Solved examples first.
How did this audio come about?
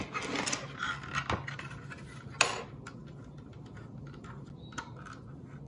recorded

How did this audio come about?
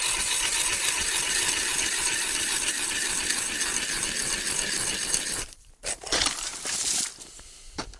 recorded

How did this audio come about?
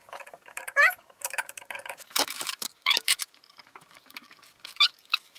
remade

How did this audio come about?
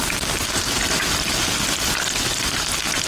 recorded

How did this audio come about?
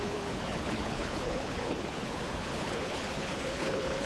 remade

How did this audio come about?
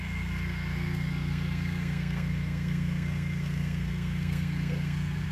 remade